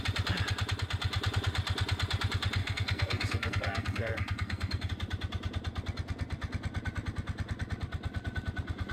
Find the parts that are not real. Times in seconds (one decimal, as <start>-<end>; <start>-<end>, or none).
2.6-4.9